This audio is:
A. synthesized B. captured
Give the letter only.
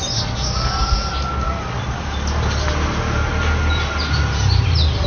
B